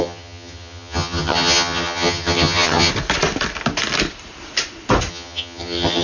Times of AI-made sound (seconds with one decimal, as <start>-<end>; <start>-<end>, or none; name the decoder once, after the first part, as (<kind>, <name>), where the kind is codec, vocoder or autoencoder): 0.0-2.9 (vocoder, HiFi-GAN); 5.1-6.0